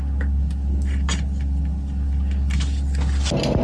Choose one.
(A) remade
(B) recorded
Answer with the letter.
B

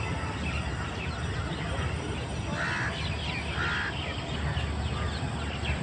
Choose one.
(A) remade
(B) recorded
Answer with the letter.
B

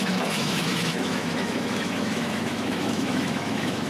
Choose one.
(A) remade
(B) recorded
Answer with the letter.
A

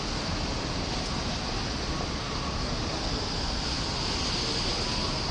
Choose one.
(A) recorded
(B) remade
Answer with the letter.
A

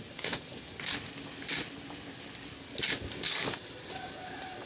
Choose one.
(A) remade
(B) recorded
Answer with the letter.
B